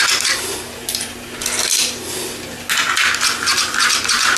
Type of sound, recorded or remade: recorded